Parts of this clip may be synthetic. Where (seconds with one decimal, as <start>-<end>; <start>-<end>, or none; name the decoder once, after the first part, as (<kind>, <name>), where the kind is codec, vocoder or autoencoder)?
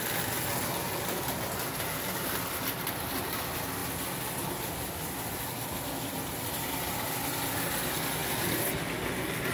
none